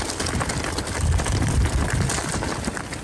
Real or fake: real